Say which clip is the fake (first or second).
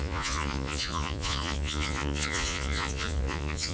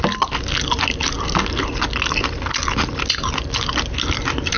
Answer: first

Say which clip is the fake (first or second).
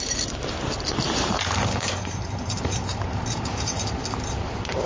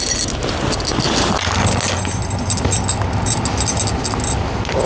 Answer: first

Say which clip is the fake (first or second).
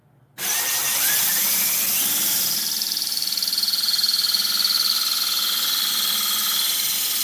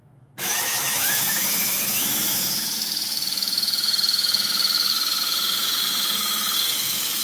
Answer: second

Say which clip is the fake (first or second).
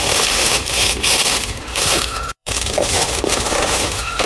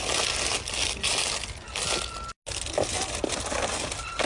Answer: first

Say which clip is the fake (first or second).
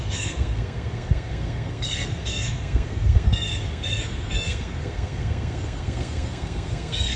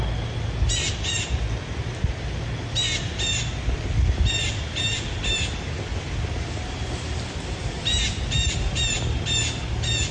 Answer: first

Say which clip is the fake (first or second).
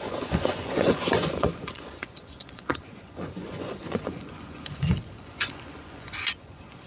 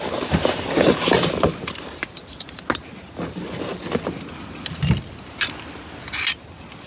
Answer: first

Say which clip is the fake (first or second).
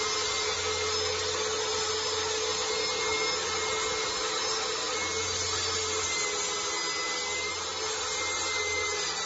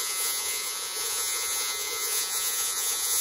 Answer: second